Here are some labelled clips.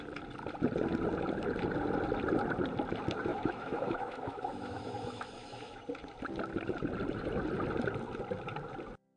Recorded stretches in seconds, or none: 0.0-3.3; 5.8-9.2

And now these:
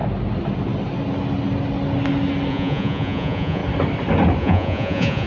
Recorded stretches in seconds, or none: 0.0-2.5; 3.6-4.4

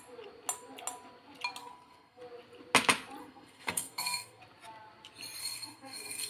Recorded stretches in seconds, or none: 0.0-1.6; 2.2-3.2; 4.4-5.4

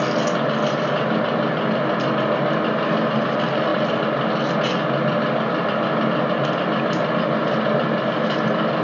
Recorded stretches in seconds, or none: 0.0-8.8